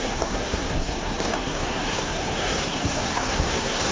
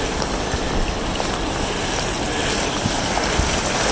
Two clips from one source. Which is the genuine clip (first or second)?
second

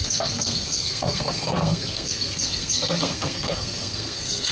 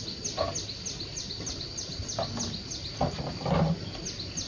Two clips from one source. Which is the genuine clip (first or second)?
second